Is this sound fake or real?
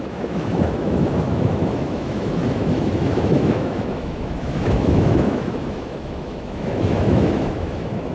fake